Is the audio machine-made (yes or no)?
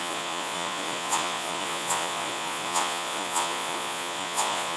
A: yes